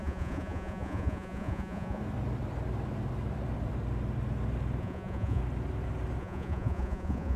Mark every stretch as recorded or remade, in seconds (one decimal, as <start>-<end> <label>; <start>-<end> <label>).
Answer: 0.0-2.0 remade; 2.0-4.8 recorded; 4.8-5.4 remade; 5.4-6.2 recorded; 6.2-7.4 remade